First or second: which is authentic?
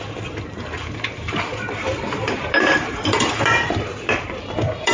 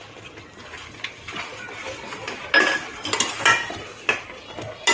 second